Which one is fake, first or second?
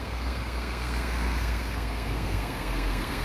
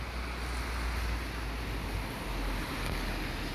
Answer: first